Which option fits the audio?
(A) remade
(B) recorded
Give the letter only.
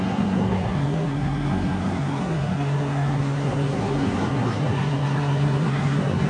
A